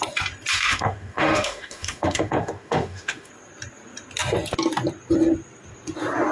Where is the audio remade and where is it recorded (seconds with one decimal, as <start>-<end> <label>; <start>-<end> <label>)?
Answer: 0.0-0.5 recorded; 0.5-3.3 remade; 3.3-6.3 recorded